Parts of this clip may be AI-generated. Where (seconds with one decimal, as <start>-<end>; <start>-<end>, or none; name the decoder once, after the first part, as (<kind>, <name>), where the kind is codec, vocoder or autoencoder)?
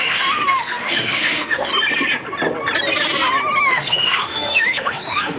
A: 0.0-1.7 (autoencoder, DAC-VAE); 3.6-5.4